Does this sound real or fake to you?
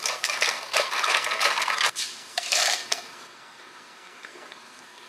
fake